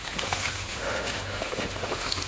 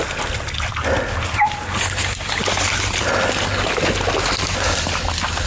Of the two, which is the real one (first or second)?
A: second